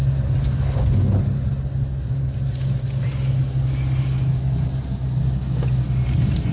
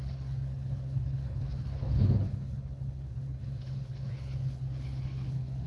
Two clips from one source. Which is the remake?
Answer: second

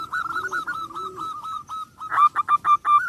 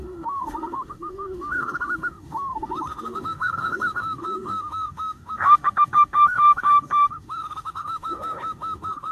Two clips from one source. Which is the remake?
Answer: second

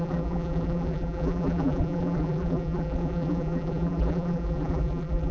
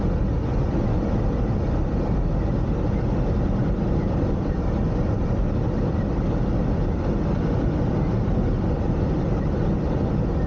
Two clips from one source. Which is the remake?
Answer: first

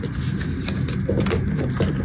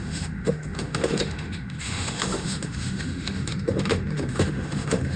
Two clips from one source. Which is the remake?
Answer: second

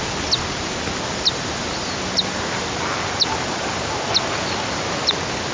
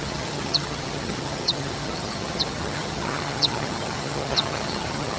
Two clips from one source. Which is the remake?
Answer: second